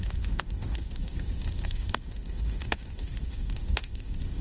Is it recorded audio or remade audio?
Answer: remade